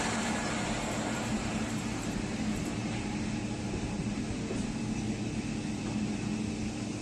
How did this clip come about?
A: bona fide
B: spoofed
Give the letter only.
A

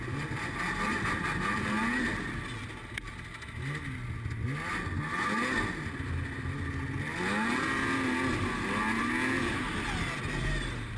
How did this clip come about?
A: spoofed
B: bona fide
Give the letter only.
B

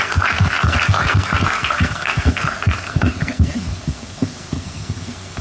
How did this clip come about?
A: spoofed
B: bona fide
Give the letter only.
A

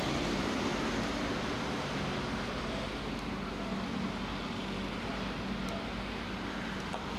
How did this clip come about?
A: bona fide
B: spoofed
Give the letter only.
A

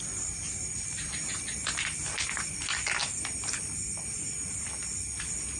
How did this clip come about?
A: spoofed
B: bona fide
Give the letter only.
B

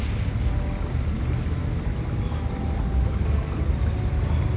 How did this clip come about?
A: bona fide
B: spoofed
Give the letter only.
A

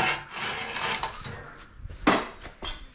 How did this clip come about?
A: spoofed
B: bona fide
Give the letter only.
B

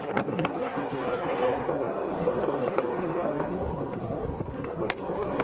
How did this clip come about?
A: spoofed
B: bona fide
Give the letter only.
A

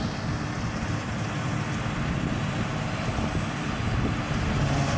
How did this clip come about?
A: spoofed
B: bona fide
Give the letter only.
B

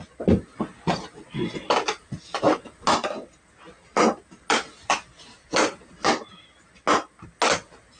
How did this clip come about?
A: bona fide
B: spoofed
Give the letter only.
A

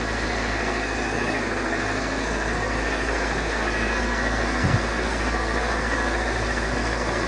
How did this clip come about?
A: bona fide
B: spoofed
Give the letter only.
B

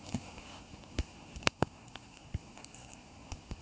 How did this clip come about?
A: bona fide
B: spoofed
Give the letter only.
B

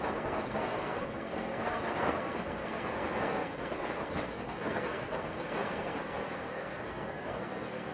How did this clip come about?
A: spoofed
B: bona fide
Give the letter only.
A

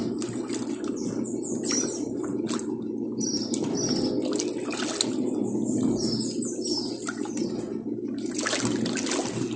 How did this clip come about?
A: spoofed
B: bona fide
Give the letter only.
B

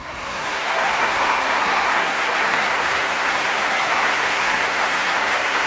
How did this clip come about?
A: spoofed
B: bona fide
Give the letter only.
A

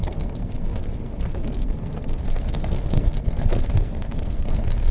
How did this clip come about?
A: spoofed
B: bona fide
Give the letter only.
A